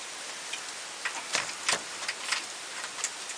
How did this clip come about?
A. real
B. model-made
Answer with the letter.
A